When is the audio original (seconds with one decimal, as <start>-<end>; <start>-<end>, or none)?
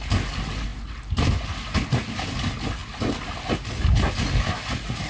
0.0-5.1